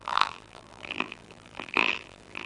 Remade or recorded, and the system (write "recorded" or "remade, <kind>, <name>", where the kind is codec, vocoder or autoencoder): remade, vocoder, BigVGAN v2